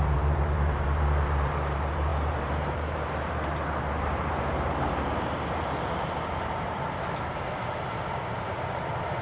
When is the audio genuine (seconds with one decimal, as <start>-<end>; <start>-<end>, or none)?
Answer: none